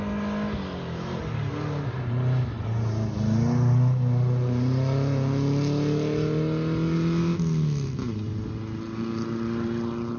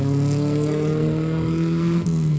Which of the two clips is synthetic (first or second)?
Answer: second